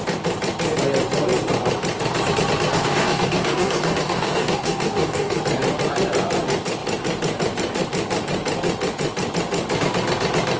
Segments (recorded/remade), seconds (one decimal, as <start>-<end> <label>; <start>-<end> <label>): 0.0-2.7 recorded; 2.7-5.4 remade; 5.4-10.6 recorded

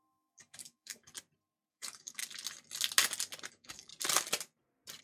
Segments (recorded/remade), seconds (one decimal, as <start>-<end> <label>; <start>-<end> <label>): 0.0-1.1 remade; 1.1-1.7 recorded; 1.7-2.2 remade; 2.2-3.5 recorded; 3.5-3.9 remade; 3.9-5.0 recorded

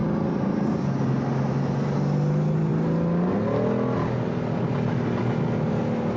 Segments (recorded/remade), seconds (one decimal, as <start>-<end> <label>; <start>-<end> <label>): 0.0-6.2 recorded

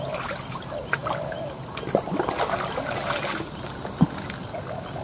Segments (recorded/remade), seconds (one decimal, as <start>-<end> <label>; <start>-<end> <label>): 0.0-5.0 recorded

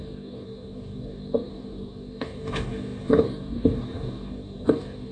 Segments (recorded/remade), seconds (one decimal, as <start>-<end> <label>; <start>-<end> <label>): 0.0-5.1 remade